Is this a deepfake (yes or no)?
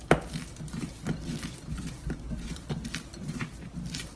yes